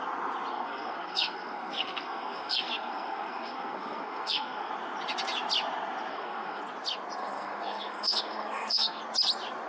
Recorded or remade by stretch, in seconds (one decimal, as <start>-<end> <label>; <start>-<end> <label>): 0.0-0.5 recorded; 0.5-4.7 remade; 4.7-6.1 recorded; 6.1-6.6 remade; 6.6-7.2 recorded; 7.2-9.0 remade; 9.0-9.7 recorded